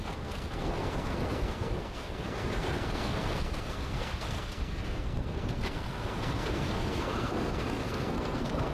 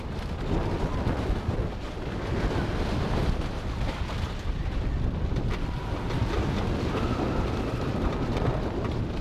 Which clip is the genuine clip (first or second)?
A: second